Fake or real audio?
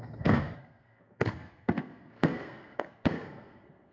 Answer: fake